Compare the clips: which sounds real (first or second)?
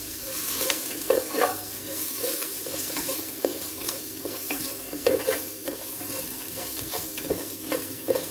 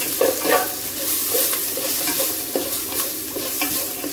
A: second